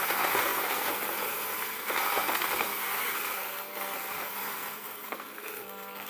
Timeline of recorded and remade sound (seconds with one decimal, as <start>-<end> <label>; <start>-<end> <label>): 0.0-6.1 remade

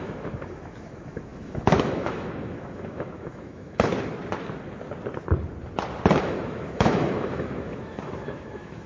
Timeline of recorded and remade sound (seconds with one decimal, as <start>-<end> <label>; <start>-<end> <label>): 0.0-3.9 remade; 3.9-6.1 recorded; 6.1-8.9 remade

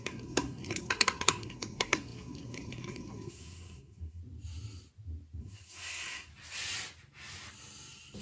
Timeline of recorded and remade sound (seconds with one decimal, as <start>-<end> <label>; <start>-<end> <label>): 0.0-4.2 remade; 4.2-5.4 recorded; 5.4-6.3 remade; 6.3-8.2 recorded

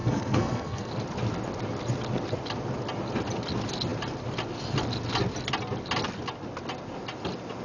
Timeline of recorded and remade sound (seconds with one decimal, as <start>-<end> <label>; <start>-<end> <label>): 0.0-0.9 remade; 0.9-7.6 recorded